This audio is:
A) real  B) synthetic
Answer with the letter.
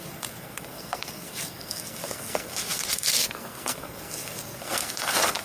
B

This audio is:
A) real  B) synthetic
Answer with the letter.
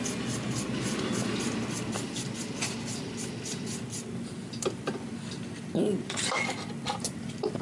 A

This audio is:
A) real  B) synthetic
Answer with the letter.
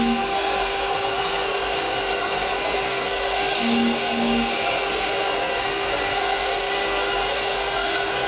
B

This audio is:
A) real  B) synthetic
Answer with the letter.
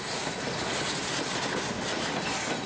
A